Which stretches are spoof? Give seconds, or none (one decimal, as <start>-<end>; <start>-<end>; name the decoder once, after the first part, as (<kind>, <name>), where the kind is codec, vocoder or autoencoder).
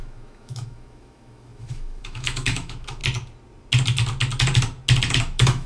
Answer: 0.0-3.0 (autoencoder, DAC-VAE); 5.2-5.7